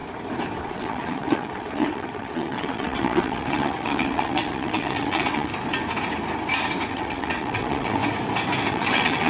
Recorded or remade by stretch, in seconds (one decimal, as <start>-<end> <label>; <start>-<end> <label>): 0.0-0.6 recorded; 0.6-5.5 remade; 5.5-6.9 recorded; 6.9-8.0 remade; 8.0-8.7 recorded; 8.7-9.3 remade